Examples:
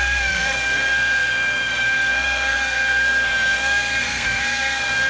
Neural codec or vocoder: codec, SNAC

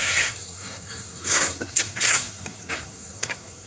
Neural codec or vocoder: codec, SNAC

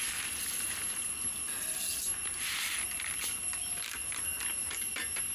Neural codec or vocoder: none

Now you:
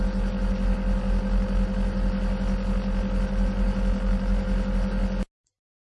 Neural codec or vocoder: none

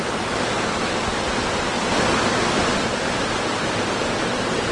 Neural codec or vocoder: none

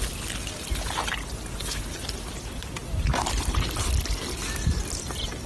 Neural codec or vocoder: none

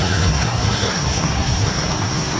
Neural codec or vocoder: codec, SNAC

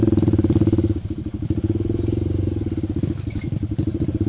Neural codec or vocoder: none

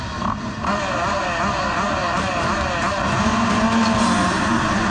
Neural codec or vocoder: none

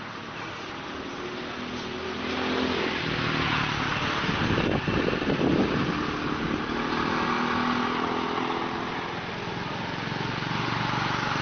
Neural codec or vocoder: none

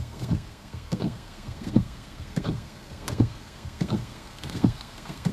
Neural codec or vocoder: codec, SNAC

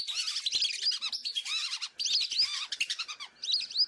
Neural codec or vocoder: none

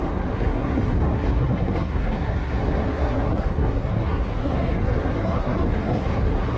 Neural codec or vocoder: codec, SNAC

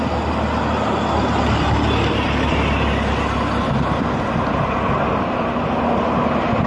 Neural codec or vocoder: none